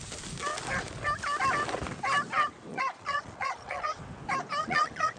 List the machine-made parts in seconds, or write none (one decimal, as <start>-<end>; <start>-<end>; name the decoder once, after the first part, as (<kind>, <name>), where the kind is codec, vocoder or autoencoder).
2.7-4.0 (vocoder, Vocos); 4.6-5.2